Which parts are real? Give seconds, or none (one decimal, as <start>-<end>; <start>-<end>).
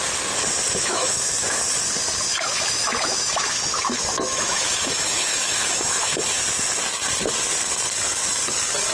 0.0-0.8; 1.6-2.3; 6.4-8.9